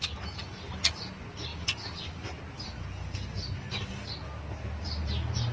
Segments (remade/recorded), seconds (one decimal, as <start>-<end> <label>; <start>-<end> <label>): 0.0-5.5 recorded